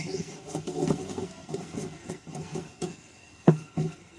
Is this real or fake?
fake